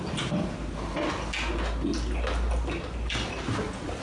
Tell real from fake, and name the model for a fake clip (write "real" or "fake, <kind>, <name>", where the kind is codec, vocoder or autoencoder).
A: real